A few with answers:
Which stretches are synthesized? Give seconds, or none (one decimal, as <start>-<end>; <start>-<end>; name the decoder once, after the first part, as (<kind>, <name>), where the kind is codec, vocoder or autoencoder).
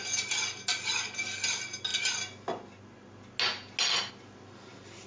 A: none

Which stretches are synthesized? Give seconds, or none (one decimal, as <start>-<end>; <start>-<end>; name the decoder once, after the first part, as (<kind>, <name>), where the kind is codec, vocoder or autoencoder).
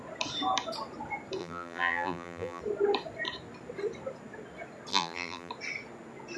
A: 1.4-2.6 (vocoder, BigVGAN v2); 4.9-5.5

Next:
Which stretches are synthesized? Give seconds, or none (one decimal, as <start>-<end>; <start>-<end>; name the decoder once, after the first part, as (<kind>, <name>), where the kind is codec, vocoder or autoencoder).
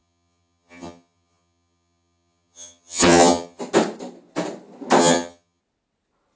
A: 0.0-3.6 (vocoder, HiFi-GAN); 5.0-5.6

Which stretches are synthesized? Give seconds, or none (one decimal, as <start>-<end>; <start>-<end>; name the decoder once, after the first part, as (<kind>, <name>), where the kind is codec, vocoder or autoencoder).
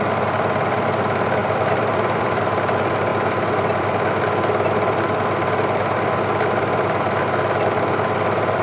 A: 1.4-2.4 (vocoder, BigVGAN v2)